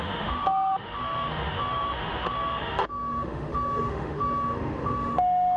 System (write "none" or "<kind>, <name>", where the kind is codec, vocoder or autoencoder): autoencoder, DAC-VAE